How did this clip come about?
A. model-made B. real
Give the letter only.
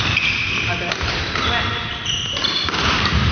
B